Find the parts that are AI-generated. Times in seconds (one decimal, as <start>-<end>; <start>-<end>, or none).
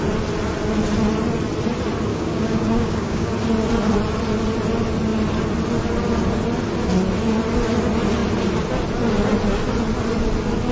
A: 2.1-3.3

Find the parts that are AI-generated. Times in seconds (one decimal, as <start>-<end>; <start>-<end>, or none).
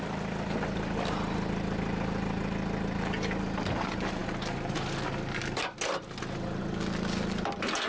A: none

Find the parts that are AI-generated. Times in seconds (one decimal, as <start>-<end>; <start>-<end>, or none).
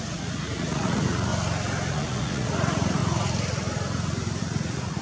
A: 0.0-1.3; 1.9-3.0; 4.4-5.0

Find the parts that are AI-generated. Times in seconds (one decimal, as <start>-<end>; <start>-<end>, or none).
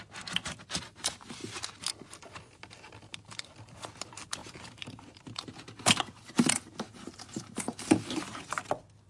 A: 4.4-8.5